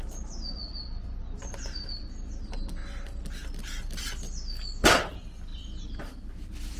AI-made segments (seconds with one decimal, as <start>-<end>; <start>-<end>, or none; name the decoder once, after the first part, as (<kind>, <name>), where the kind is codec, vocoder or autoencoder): none